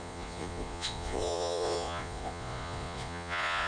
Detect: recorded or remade remade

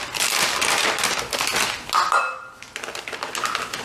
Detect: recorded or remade recorded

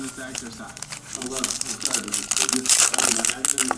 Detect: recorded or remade recorded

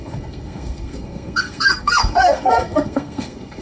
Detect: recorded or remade remade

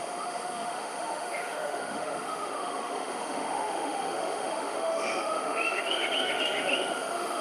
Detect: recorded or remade remade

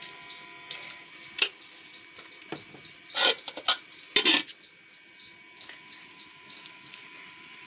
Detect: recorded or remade recorded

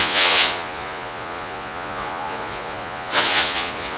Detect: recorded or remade remade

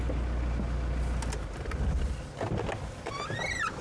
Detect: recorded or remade recorded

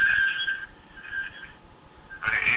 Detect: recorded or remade recorded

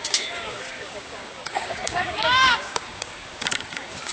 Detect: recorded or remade remade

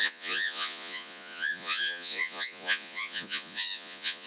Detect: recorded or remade remade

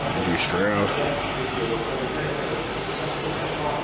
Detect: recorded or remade recorded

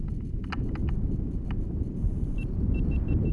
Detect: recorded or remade recorded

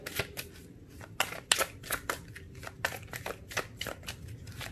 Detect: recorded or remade recorded